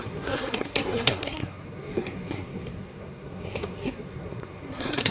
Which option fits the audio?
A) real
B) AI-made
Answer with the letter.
B